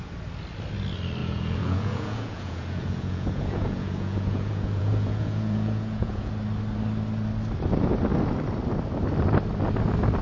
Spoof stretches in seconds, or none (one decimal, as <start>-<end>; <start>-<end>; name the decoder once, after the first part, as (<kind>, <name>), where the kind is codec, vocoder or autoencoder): 1.2-6.3 (vocoder, Vocos)